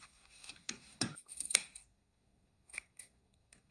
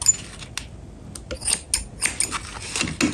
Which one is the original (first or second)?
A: second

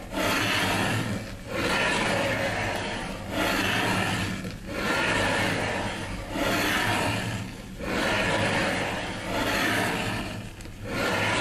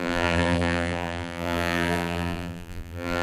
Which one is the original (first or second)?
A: first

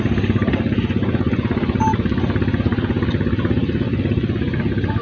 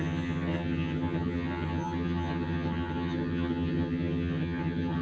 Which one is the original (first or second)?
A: first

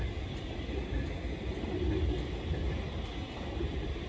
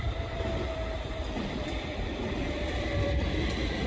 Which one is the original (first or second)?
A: first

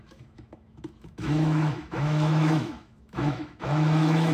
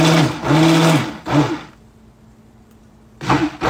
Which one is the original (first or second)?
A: second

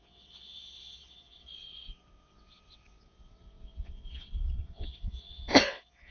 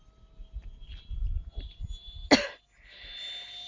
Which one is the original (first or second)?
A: second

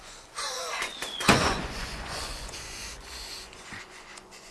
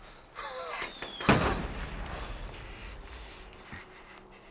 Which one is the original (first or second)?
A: second